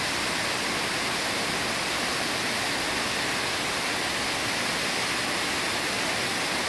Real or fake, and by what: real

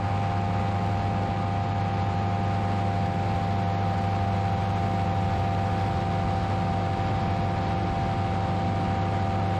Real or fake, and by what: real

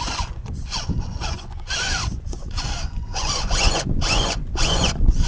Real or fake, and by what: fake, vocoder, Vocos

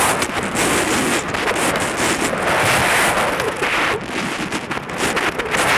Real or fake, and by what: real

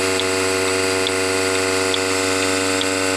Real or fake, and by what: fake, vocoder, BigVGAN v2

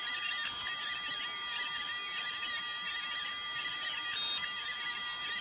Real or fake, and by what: real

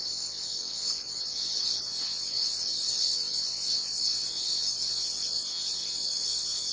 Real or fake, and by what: fake, vocoder, WaveNeXt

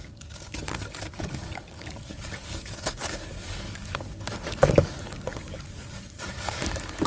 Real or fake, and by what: fake, codec, DAC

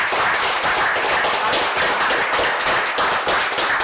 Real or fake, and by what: real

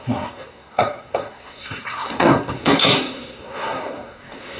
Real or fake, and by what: fake, codec, SNAC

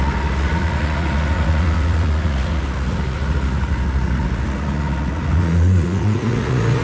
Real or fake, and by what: fake, vocoder, Vocos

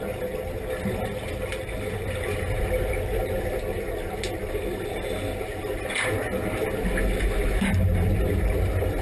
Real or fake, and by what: real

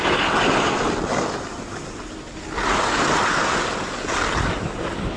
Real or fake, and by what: real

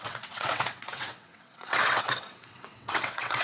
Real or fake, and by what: fake, vocoder, WaveNeXt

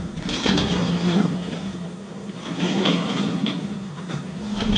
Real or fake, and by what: fake, codec, SNAC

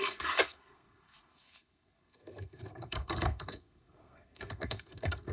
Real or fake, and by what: fake, codec, SNAC